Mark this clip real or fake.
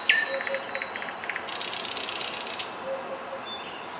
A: real